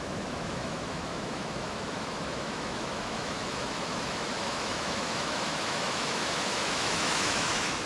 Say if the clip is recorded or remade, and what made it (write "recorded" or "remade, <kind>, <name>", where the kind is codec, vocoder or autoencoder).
remade, autoencoder, DAC-VAE